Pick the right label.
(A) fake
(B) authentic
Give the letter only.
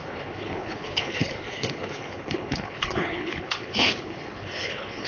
A